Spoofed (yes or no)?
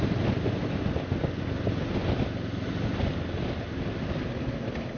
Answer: no